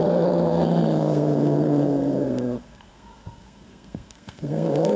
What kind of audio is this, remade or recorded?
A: remade